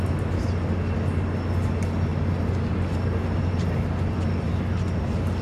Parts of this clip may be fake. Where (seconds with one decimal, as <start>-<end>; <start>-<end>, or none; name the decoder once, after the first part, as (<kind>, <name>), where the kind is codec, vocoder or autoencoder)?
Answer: none